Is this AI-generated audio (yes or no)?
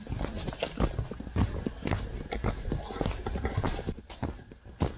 no